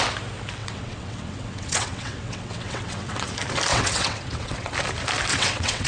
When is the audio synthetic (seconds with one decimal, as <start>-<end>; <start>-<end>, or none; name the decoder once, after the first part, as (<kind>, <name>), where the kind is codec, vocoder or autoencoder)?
0.6-3.3 (vocoder, WaveNeXt); 3.7-4.7; 5.3-5.9